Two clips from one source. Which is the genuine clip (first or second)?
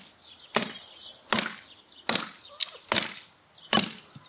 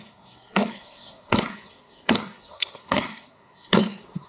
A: first